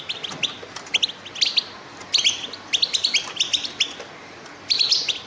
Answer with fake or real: real